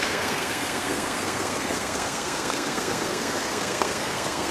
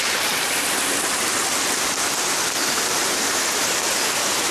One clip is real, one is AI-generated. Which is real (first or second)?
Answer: second